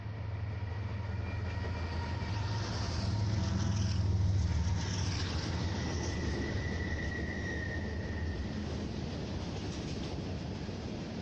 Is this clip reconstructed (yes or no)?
no